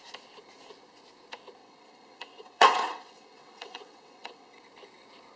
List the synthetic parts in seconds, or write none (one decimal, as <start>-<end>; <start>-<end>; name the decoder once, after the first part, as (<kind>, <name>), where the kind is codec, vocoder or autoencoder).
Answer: 1.6-4.6 (vocoder, WaveNeXt)